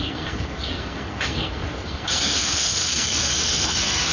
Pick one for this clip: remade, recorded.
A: remade